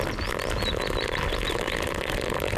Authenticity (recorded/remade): recorded